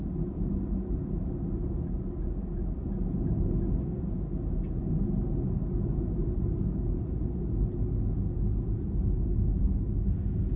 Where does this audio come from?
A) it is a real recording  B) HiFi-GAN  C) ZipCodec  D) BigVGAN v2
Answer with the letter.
A